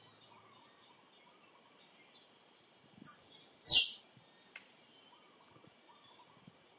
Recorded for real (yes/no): yes